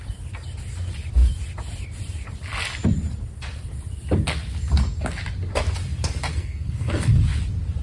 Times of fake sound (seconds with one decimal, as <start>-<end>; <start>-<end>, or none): 6.3-7.1